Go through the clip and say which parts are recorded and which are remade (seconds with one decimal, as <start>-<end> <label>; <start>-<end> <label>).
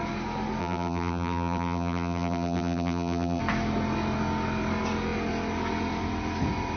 0.0-0.6 recorded; 0.6-3.4 remade; 3.4-6.8 recorded